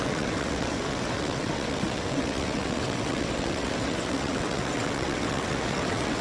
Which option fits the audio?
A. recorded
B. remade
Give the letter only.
B